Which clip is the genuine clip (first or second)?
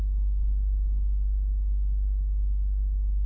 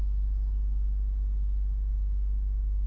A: second